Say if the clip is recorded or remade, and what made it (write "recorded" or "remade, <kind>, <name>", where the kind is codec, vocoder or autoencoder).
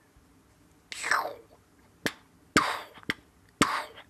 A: recorded